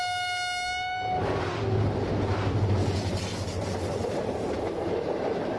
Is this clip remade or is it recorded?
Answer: recorded